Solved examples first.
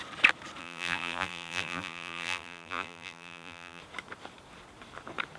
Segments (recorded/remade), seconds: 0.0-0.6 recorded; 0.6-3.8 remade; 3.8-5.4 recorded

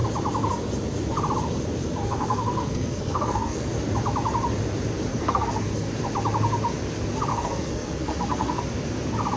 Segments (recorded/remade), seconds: 0.0-2.0 recorded; 2.0-3.7 remade; 3.7-5.1 recorded; 5.1-5.9 remade; 5.9-7.3 recorded; 7.3-8.6 remade; 8.6-9.4 recorded

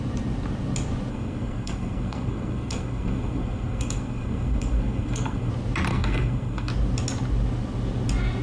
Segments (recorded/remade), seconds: 0.0-1.1 recorded; 1.1-5.5 remade; 5.5-5.9 recorded; 5.9-6.7 remade; 6.7-8.4 recorded

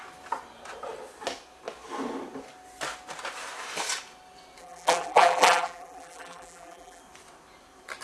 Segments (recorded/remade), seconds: 0.0-4.6 recorded; 4.6-7.0 remade; 7.0-8.0 recorded

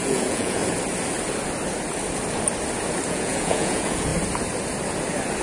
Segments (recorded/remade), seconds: 0.0-0.6 remade; 0.6-3.1 recorded; 3.1-4.1 remade; 4.1-5.4 recorded

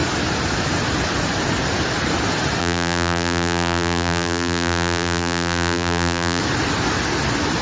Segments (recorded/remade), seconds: 0.0-2.6 recorded; 2.6-6.4 remade; 6.4-7.6 recorded

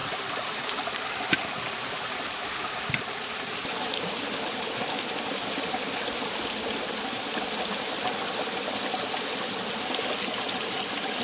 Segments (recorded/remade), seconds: 0.0-0.6 remade; 0.6-1.4 recorded; 1.4-4.3 remade; 4.3-11.2 recorded

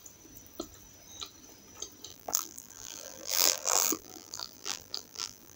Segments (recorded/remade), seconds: 0.0-2.1 recorded; 2.1-5.6 remade